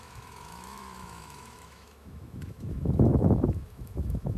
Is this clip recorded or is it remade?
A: remade